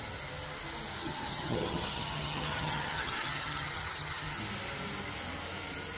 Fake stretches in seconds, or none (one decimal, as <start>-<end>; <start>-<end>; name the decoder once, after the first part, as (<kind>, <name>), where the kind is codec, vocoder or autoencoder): 1.0-4.4 (vocoder, HiFi-GAN)